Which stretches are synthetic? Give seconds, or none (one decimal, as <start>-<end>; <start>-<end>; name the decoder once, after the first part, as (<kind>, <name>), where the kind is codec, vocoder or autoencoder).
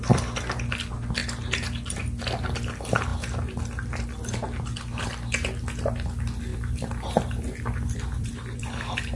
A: 1.2-2.2 (vocoder, BigVGAN v2); 3.1-4.0; 6.5-9.2